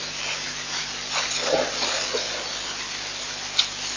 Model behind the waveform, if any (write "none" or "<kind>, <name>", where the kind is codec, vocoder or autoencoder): none